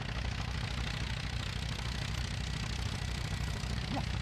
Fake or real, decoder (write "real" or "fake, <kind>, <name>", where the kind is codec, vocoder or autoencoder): real